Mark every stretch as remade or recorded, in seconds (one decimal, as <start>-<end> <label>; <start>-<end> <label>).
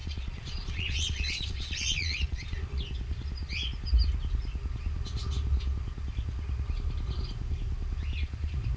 0.0-2.8 remade; 2.8-8.8 recorded